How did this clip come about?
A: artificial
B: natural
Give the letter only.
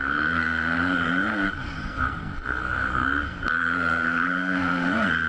A